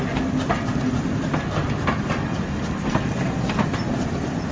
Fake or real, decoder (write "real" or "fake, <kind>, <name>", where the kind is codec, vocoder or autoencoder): real